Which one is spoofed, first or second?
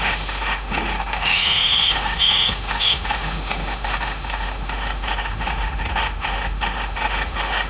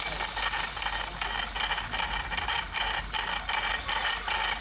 first